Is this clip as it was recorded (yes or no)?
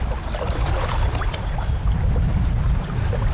yes